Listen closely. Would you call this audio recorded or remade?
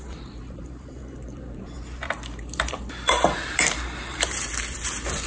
remade